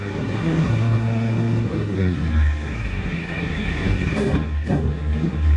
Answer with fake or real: fake